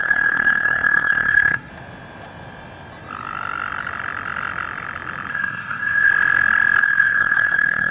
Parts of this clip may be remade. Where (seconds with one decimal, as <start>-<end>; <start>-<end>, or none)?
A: 0.0-1.7; 5.3-6.1; 6.8-7.9